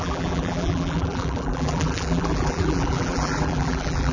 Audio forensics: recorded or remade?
remade